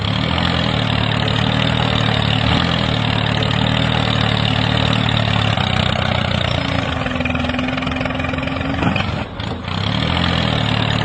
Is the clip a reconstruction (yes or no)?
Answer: no